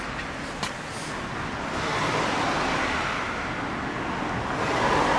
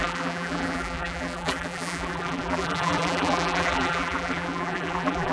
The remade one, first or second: second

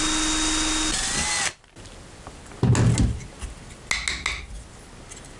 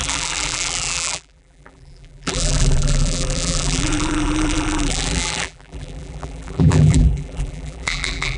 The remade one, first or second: second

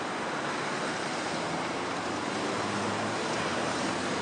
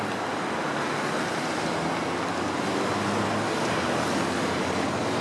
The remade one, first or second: first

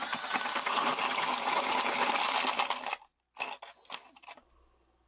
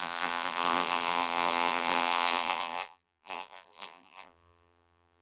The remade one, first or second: second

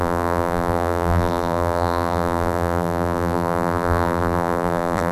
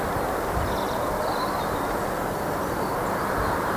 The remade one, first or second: first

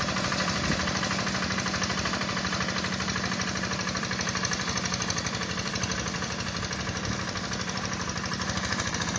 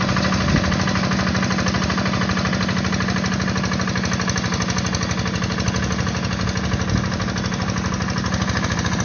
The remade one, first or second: first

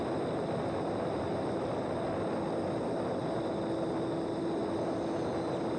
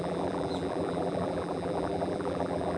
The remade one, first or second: second